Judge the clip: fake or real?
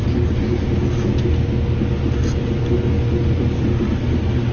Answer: real